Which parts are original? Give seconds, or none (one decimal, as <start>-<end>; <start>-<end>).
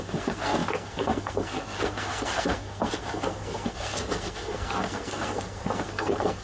none